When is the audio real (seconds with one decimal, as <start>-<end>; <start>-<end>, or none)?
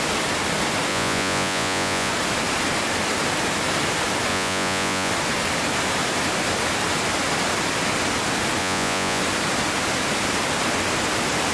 0.0-0.9; 2.1-4.3; 5.1-8.6; 9.2-11.5